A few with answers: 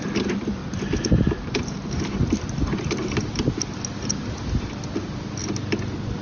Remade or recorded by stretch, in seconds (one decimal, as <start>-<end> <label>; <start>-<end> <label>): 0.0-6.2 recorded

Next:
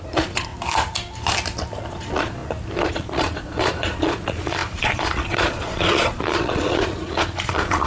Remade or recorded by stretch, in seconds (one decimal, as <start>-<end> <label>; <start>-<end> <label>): 0.0-0.5 remade; 0.5-1.9 recorded; 1.9-2.4 remade; 2.4-2.9 recorded; 2.9-7.9 remade

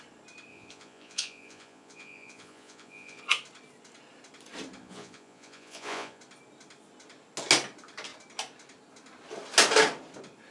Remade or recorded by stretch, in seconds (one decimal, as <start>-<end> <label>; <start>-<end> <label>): 0.0-0.5 recorded; 0.5-3.2 remade; 3.2-4.8 recorded; 4.8-6.2 remade; 6.2-10.5 recorded

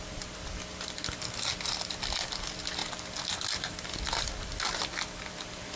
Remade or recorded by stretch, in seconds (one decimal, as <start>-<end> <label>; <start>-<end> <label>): 0.0-5.8 recorded